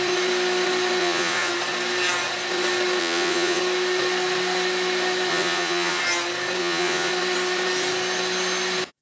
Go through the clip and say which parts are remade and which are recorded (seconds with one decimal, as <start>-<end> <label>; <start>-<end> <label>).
0.0-1.0 recorded; 1.0-1.5 remade; 1.5-3.0 recorded; 3.0-3.6 remade; 3.6-5.3 recorded; 5.3-6.0 remade; 6.0-6.6 recorded; 6.6-7.1 remade; 7.1-9.0 recorded